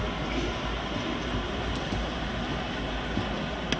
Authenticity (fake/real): real